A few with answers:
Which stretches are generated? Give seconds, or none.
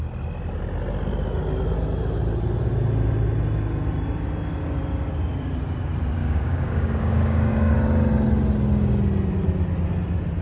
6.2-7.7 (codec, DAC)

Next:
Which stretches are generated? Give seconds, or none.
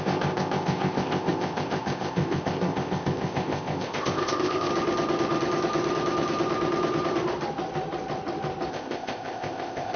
0.0-4.7 (codec, ZipCodec); 8.7-10.0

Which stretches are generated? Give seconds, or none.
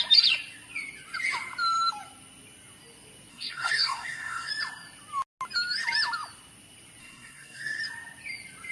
3.3-4.5 (codec, SNAC); 7.0-7.8